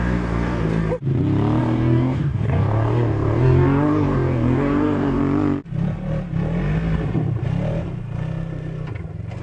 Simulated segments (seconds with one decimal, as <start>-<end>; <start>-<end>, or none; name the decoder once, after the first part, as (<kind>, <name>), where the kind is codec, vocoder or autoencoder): 0.0-0.8 (codec, DAC); 1.6-5.2

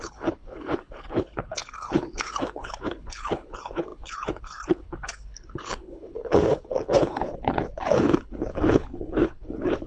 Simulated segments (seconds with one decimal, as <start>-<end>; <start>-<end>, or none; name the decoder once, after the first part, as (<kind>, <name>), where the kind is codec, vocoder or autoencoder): 0.0-9.9 (codec, HILCodec)